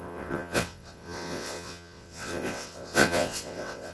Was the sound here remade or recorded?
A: remade